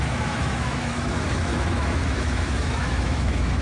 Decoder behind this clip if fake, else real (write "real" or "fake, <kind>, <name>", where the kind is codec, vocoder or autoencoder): fake, autoencoder, DAC-VAE